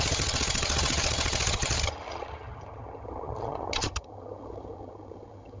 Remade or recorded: remade